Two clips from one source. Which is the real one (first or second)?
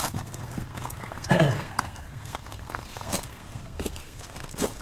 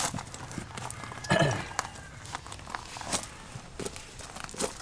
second